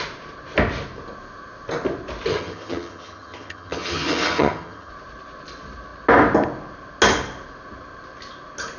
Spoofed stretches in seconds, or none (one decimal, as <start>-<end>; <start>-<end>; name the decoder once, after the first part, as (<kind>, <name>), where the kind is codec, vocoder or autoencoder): 2.3-4.9 (vocoder, HiFi-GAN)